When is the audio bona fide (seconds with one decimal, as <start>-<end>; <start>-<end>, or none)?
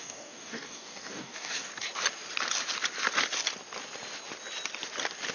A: 1.7-5.3